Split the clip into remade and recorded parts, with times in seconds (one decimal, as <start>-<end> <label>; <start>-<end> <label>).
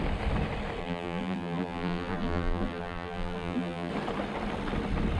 0.0-0.8 recorded; 0.8-3.9 remade; 3.9-5.2 recorded